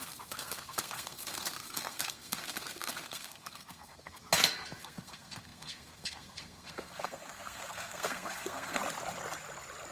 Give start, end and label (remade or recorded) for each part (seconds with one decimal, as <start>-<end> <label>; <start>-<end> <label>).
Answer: 0.0-4.2 remade; 4.2-4.8 recorded; 4.8-8.8 remade; 8.8-9.9 recorded